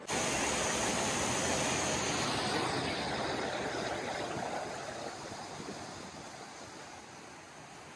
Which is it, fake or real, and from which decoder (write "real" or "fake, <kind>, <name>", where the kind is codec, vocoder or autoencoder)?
real